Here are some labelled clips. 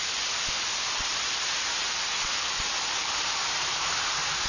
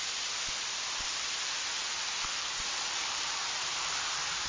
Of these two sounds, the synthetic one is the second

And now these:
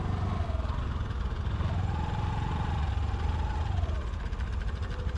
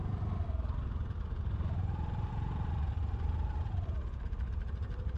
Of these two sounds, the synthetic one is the second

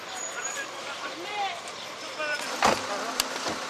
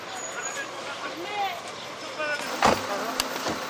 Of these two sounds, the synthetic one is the first